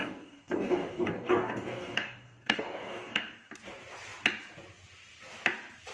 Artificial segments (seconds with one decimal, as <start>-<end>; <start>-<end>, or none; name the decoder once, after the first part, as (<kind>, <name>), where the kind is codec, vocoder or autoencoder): 0.0-3.5 (codec, DAC)